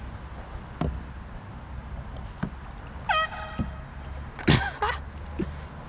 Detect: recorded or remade recorded